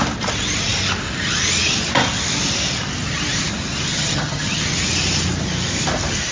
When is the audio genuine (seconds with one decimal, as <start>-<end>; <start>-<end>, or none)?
0.0-3.9; 4.6-6.3